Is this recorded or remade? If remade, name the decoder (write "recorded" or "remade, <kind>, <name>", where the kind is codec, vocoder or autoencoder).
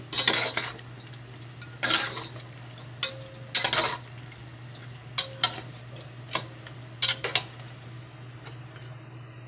recorded